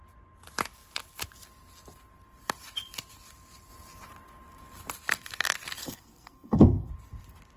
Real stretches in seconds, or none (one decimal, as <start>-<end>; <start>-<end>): 0.0-5.8; 6.9-7.6

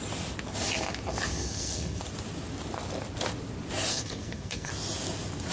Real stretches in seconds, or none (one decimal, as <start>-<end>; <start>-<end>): 0.0-1.3; 2.0-3.9; 4.7-5.5